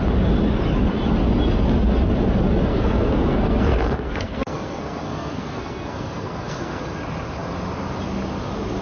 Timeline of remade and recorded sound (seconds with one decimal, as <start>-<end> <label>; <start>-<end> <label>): 0.0-2.7 recorded; 2.7-6.8 remade; 6.8-8.8 recorded